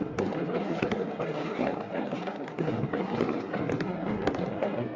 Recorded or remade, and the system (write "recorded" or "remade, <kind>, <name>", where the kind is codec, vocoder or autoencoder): remade, codec, SNAC